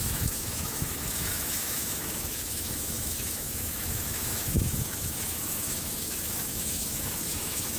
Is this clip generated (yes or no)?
yes